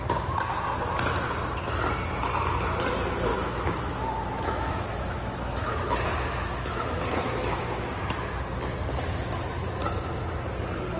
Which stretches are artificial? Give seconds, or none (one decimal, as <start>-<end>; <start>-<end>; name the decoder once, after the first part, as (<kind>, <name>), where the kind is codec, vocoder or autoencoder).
3.3-8.4 (autoencoder, DAC-VAE)